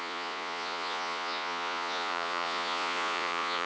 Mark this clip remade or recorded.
remade